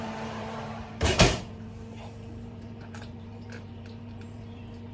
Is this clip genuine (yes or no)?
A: no